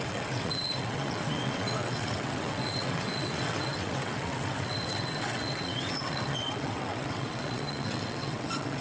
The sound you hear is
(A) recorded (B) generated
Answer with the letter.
B